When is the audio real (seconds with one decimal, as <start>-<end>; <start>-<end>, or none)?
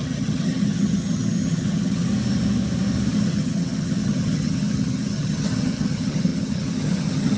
2.1-3.1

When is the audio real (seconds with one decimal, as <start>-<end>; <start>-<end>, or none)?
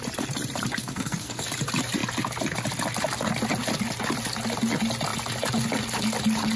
0.0-0.8; 1.4-6.6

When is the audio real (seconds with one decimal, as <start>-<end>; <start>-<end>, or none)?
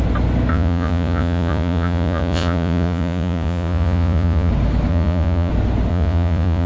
0.0-0.5; 4.5-4.9; 5.5-5.9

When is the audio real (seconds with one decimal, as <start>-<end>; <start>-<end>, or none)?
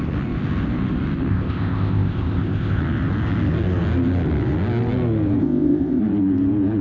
0.0-1.3; 2.8-5.4; 6.0-6.8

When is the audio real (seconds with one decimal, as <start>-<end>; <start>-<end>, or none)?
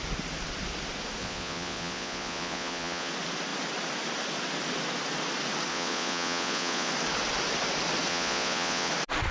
0.0-1.2; 3.1-5.7; 6.9-8.1; 8.9-9.3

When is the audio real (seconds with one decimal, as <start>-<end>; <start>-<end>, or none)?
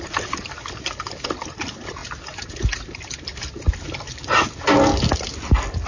0.0-5.9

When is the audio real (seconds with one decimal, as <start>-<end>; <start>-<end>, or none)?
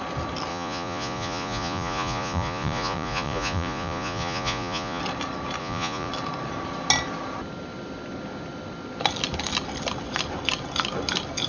0.0-0.5; 5.0-5.6; 6.1-11.5